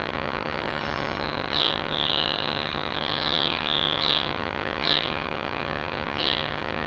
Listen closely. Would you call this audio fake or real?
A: fake